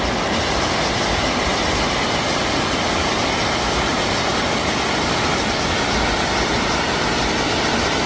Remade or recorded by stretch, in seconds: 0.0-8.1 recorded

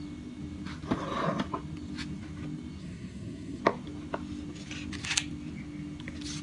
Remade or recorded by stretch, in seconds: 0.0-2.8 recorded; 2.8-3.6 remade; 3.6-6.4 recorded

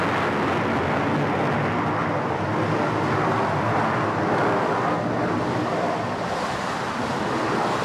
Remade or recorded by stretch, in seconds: 0.0-7.8 recorded

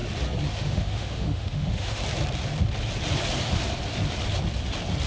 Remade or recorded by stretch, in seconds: 0.0-0.6 recorded; 0.6-2.0 remade; 2.0-5.1 recorded

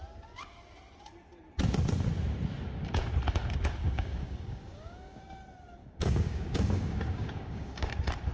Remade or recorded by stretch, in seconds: 0.0-3.8 recorded; 3.8-5.2 remade; 5.2-5.8 recorded; 5.8-7.9 remade; 7.9-8.3 recorded